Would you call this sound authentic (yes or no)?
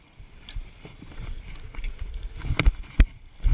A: yes